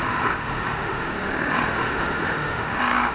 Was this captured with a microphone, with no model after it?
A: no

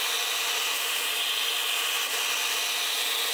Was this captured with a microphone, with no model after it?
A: yes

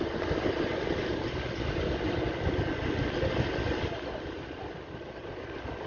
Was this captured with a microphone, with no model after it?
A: yes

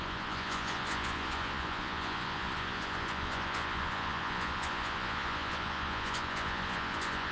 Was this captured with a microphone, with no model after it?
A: no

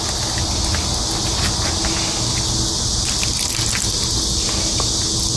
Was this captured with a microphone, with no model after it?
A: yes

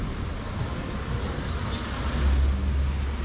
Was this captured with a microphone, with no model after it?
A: yes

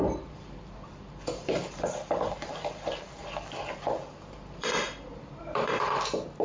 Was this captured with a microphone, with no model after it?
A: no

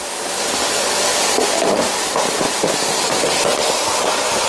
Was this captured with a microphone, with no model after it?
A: yes